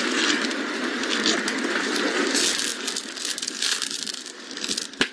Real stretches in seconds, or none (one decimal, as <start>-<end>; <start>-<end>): 0.0-5.1